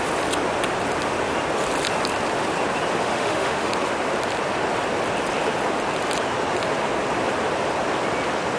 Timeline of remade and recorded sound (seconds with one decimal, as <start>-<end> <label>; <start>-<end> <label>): 0.0-3.0 recorded; 3.0-3.7 remade; 3.7-8.6 recorded